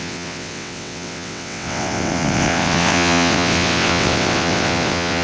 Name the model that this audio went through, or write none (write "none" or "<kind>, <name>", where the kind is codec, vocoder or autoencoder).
vocoder, WaveNeXt